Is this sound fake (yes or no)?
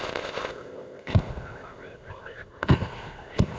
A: yes